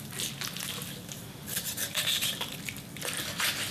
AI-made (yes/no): no